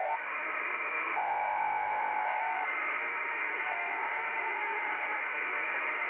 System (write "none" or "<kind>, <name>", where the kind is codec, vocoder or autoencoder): autoencoder, DAC-VAE